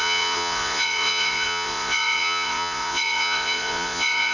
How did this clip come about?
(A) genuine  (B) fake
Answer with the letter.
B